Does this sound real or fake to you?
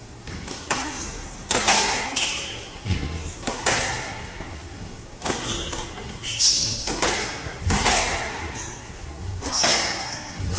fake